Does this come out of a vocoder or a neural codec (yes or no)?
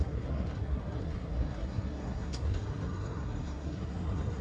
yes